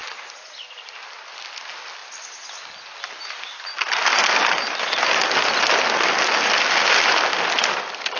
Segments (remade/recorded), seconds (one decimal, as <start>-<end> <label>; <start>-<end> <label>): 0.0-8.2 recorded